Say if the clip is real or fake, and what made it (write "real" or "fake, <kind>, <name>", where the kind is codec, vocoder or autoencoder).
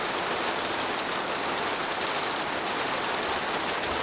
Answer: real